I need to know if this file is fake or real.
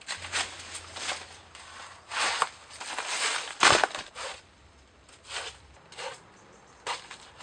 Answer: real